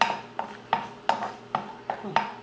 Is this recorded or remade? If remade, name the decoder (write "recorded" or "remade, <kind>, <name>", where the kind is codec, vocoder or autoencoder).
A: recorded